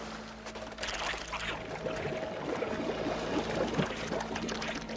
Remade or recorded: recorded